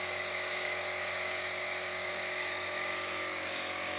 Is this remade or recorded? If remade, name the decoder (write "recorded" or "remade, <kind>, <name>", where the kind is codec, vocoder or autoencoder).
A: remade, codec, DAC